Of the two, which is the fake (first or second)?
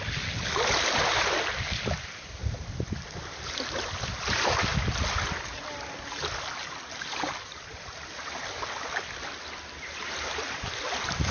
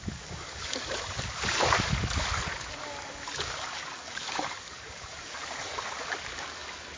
second